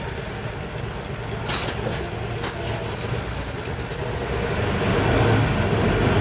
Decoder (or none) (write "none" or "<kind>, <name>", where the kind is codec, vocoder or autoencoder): none